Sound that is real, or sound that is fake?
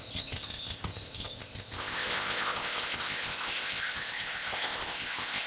fake